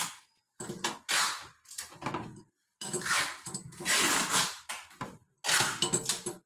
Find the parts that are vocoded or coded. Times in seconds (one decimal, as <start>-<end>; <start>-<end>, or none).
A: 2.6-4.7